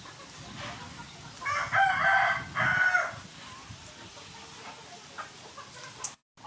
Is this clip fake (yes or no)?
no